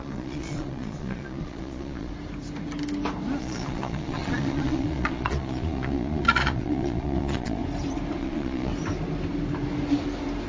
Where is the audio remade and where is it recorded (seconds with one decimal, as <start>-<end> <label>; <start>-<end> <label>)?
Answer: 0.0-2.1 remade; 2.1-3.4 recorded; 3.4-7.6 remade; 7.6-8.2 recorded; 8.2-8.7 remade; 8.7-10.5 recorded